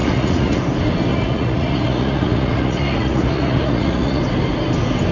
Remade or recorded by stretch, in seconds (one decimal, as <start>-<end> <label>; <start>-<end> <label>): 0.0-0.6 remade; 0.6-1.1 recorded; 1.1-4.2 remade; 4.2-5.1 recorded